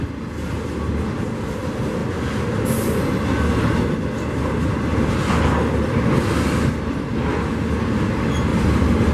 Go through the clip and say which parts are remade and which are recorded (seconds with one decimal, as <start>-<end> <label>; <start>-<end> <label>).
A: 0.0-8.5 recorded; 8.5-9.1 remade